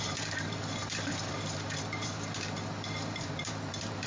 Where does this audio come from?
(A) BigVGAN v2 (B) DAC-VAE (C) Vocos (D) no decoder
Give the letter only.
A